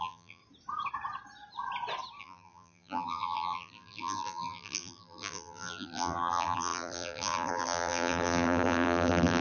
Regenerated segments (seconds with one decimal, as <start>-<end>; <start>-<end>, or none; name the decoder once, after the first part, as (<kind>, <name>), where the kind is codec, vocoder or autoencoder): 0.0-0.4 (vocoder, BigVGAN v2); 2.2-9.4